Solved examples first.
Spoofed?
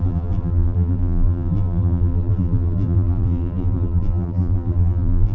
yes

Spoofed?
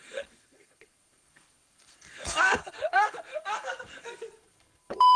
yes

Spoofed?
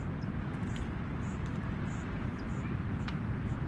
no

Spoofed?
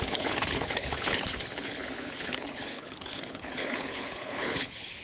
yes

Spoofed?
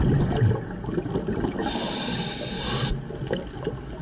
no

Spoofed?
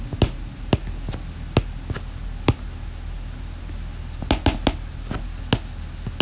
no